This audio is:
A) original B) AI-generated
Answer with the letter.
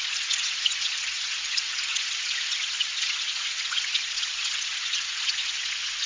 B